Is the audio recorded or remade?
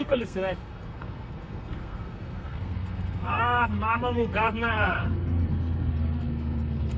remade